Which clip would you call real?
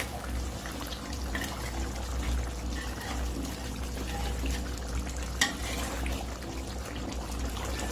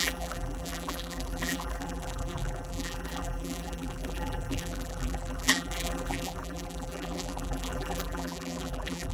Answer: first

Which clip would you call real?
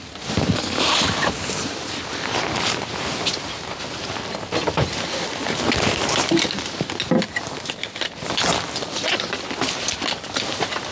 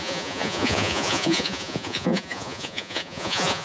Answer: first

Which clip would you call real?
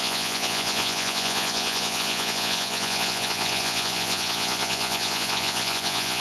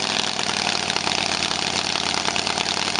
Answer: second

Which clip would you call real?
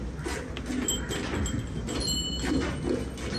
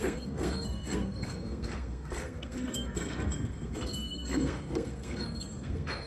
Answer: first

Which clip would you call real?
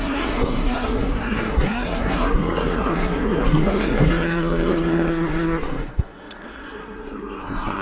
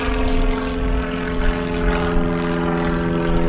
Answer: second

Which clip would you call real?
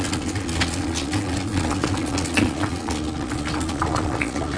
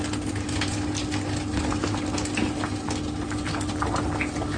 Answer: second